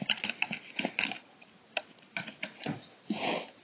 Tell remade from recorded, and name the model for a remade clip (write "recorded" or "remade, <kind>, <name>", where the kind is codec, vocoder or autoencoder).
recorded